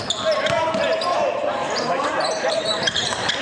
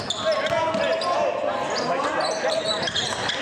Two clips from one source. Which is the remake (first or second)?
first